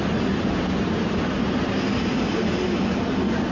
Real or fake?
real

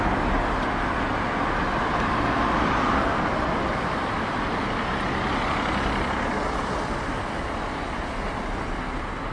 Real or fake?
real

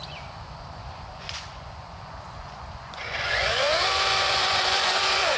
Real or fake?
fake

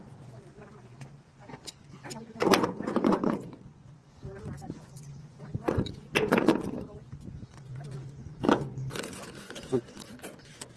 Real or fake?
fake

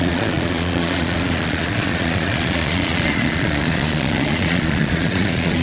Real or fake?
fake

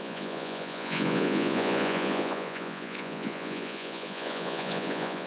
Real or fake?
fake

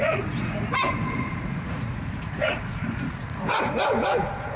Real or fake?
fake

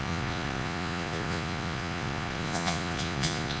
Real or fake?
fake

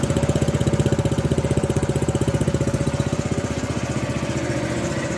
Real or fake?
fake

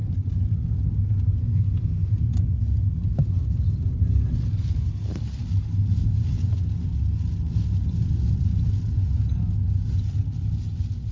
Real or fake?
real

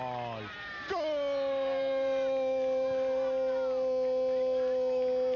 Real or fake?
real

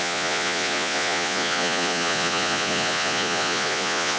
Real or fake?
fake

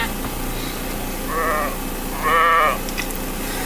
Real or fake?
real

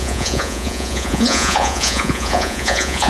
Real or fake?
fake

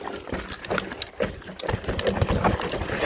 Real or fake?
real